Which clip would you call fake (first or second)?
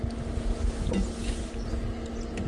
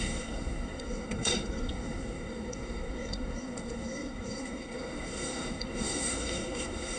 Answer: second